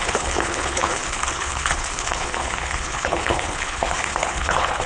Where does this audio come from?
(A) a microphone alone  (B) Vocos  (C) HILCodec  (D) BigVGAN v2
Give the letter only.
C